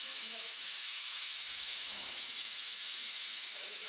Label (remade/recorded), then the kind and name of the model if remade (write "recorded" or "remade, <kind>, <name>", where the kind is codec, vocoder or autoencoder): remade, autoencoder, DAC-VAE